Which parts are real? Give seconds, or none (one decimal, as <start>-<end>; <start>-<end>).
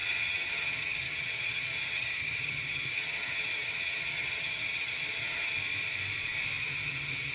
5.5-6.6